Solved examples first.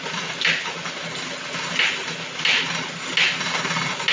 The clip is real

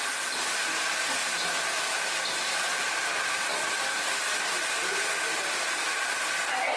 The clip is real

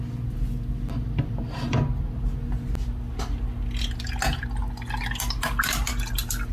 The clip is real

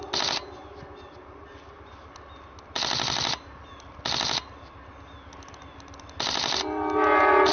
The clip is real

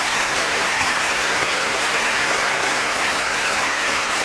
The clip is fake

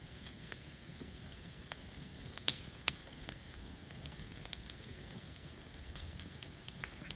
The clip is fake